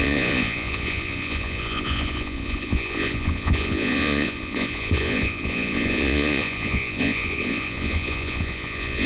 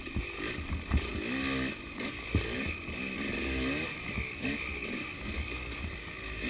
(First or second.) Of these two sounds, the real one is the second